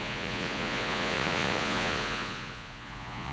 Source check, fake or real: fake